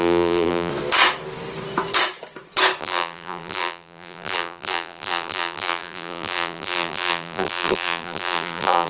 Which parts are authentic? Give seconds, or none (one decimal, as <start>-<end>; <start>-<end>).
0.7-2.8